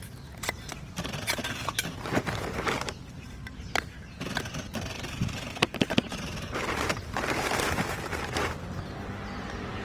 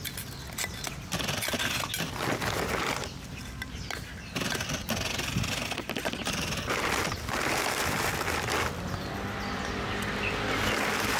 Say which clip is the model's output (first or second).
first